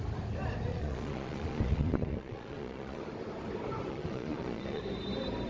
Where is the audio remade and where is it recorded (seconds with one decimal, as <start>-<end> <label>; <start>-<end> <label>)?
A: 0.0-0.7 recorded; 0.7-3.0 remade; 3.0-3.9 recorded; 3.9-4.8 remade; 4.8-5.5 recorded